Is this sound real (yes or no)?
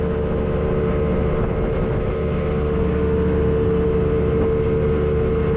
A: yes